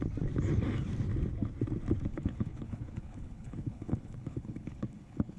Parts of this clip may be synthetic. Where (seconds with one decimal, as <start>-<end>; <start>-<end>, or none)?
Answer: 2.1-5.4